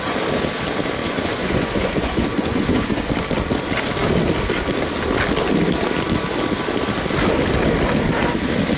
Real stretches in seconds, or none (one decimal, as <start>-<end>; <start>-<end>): 0.0-1.0; 3.0-8.8